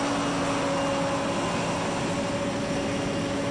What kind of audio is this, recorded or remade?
recorded